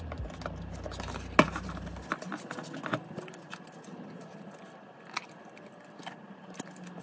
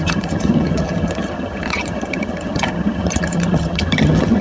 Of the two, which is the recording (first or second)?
first